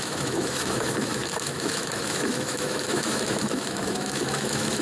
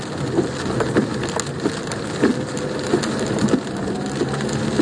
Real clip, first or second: second